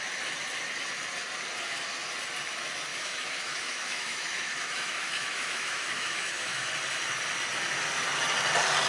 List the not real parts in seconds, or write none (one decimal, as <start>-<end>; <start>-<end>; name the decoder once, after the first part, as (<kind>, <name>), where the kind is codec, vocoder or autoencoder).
2.9-6.7 (autoencoder, DAC-VAE)